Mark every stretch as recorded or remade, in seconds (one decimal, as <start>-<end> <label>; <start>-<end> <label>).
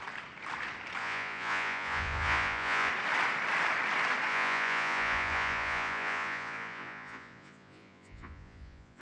0.0-1.0 recorded; 1.0-2.9 remade; 2.9-4.3 recorded; 4.3-9.0 remade